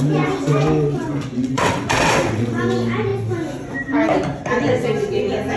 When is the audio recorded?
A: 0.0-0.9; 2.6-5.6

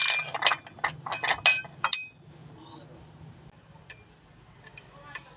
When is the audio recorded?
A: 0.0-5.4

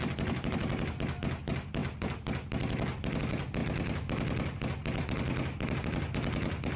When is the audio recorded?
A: 0.0-6.8